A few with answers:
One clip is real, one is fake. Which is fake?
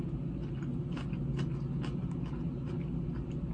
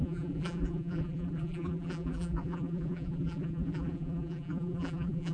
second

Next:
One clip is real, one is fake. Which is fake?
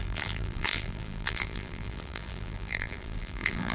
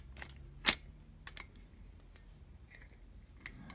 first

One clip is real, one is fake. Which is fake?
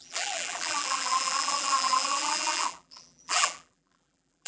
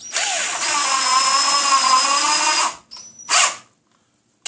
first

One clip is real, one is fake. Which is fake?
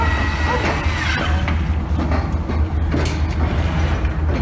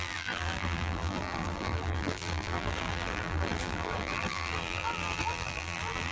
second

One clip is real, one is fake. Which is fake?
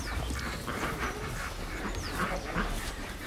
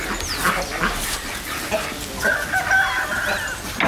first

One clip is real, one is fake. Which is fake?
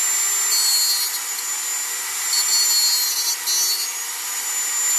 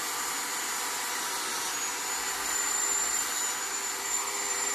second